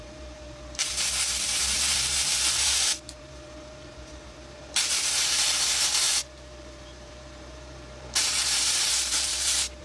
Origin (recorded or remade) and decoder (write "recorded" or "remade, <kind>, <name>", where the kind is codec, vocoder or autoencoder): remade, vocoder, BigVGAN v2